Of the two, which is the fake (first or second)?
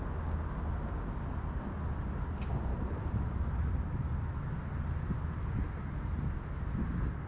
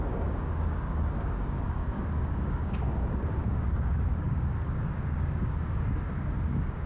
second